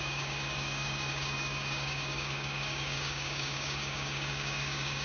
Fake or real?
fake